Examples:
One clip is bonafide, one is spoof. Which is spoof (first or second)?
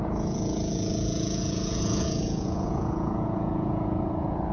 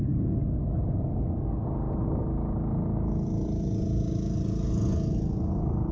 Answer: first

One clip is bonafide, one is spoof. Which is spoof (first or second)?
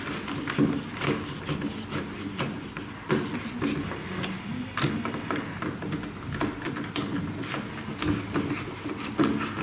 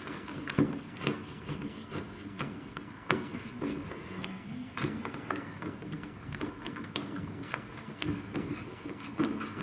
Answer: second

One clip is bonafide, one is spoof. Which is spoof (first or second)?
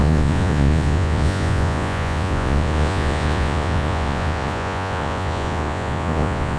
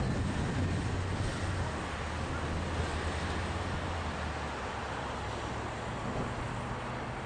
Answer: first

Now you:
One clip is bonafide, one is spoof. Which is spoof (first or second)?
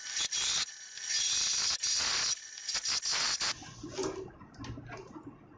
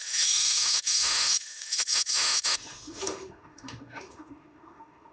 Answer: second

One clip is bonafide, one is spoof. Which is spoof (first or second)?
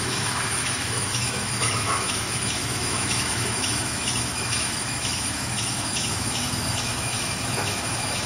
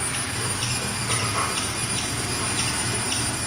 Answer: first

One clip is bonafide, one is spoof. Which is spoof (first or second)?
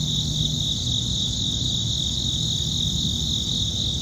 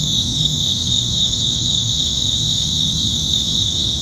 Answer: second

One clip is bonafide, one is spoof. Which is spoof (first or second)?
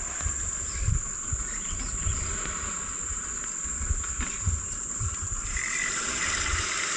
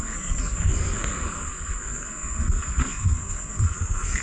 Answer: second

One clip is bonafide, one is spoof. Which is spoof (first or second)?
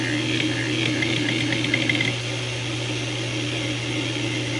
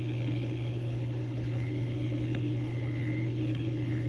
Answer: second